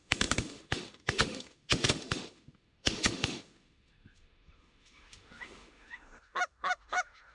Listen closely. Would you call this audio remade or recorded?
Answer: remade